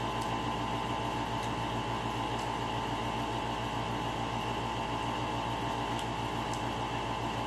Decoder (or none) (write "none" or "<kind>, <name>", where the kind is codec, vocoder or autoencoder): none